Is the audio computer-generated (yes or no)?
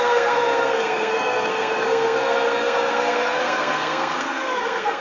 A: yes